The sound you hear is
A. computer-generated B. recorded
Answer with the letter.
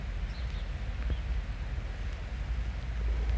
B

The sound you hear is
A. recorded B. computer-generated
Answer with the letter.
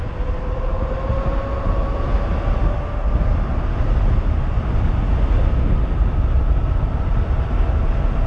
A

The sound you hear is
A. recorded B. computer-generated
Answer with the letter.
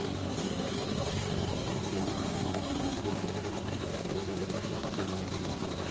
B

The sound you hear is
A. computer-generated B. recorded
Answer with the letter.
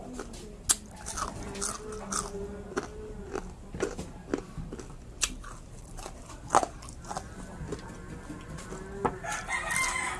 B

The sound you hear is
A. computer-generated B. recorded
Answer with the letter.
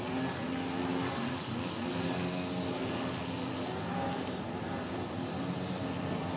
B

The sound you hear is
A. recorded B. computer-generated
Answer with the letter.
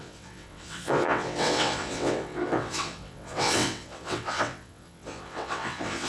B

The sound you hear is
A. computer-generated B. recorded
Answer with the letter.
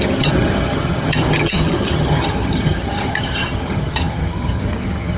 A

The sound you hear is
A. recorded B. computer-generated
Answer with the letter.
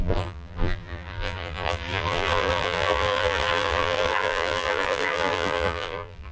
B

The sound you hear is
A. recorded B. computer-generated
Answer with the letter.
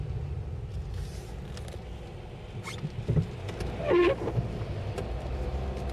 A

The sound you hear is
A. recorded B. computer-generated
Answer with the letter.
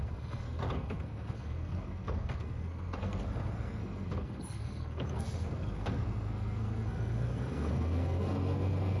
B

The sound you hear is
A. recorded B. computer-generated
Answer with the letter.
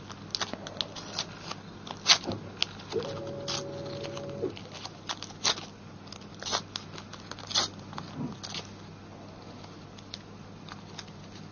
A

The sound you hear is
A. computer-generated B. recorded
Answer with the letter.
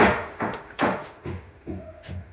A